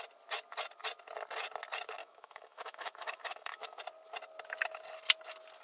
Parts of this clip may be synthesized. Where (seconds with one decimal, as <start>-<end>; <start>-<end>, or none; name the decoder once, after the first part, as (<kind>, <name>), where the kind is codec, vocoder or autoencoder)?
2.0-3.8 (autoencoder, DAC-VAE)